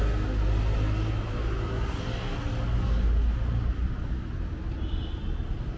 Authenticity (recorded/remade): recorded